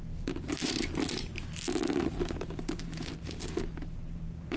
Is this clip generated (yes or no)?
yes